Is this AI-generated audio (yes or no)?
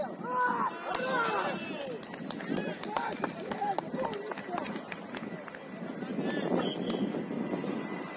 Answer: no